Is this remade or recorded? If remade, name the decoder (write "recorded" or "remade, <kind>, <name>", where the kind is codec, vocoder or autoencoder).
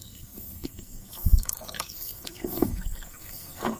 remade, codec, SNAC